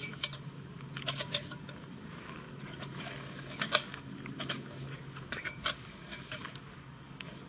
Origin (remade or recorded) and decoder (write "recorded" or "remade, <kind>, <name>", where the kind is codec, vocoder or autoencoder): remade, codec, DAC